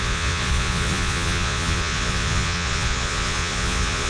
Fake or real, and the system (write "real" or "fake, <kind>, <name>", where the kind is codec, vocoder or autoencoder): fake, vocoder, Vocos